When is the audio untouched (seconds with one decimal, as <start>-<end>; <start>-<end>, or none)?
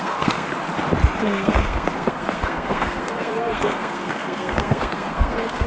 0.5-1.2